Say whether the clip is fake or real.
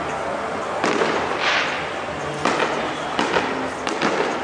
real